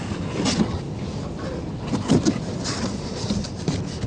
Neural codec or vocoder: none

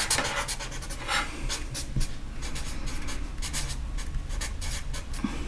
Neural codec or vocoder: none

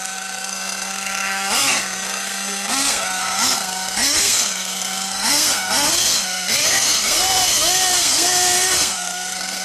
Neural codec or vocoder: codec, SNAC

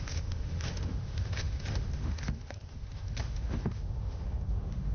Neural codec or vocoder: autoencoder, DAC-VAE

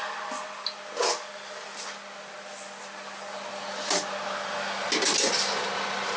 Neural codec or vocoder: none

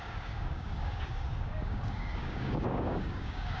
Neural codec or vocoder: codec, DAC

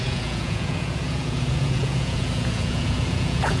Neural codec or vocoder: vocoder, Vocos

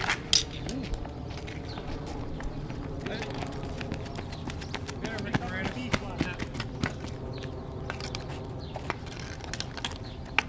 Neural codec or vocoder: none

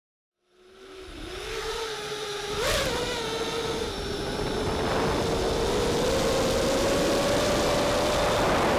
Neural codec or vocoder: none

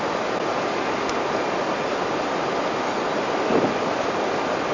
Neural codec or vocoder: none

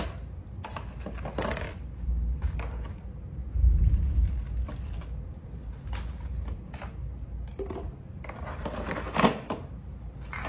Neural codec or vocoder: none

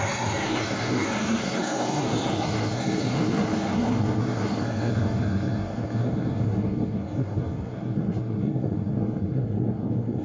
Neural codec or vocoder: codec, SNAC